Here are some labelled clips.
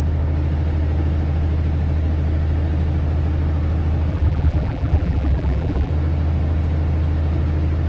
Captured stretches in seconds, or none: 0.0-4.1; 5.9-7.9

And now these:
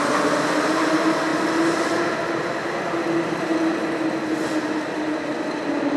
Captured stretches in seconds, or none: 0.0-6.0

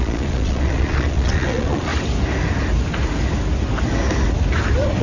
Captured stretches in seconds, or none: 1.9-5.0

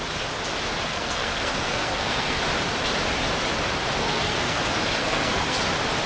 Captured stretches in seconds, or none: 0.0-0.9; 2.4-4.0; 4.6-5.0; 5.6-6.1

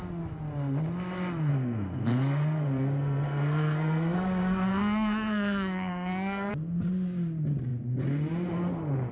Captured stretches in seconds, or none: 0.0-1.5; 6.5-9.1

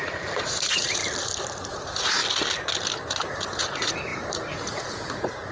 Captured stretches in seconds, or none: 1.0-1.7; 2.2-3.3

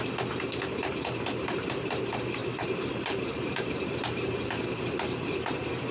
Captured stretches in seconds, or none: 0.0-2.4; 5.5-5.9

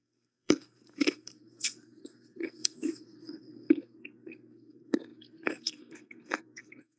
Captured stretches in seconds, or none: none